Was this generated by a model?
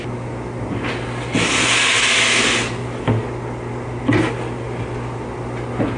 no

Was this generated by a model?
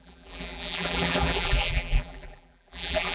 yes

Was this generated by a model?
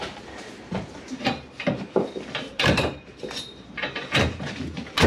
yes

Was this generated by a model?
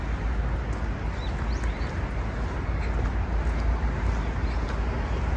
no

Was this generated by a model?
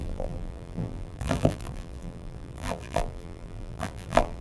yes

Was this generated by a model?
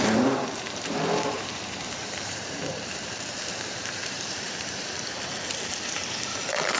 yes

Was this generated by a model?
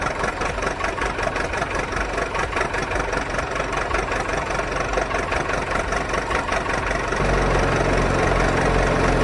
no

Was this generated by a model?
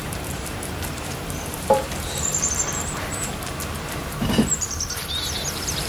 yes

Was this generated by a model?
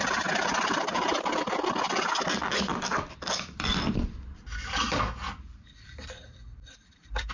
yes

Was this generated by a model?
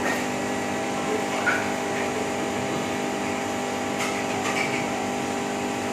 yes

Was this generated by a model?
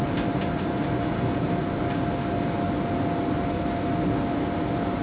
no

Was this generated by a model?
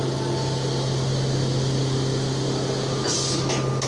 no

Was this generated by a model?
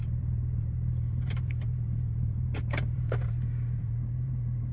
yes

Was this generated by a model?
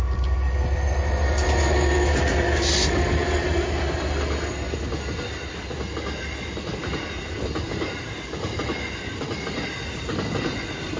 no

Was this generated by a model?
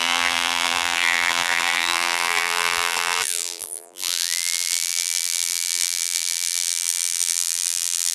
yes